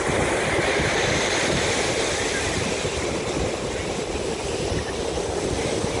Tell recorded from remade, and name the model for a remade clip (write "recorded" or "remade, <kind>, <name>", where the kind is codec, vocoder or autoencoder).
recorded